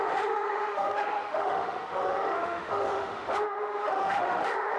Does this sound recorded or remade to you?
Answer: remade